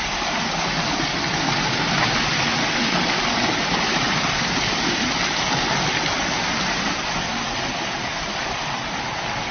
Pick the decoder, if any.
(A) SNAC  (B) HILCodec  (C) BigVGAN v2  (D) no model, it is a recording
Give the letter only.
C